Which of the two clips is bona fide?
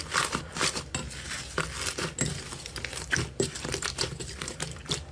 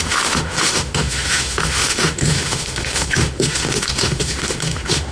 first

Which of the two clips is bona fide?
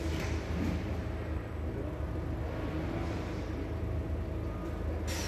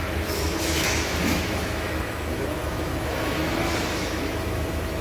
first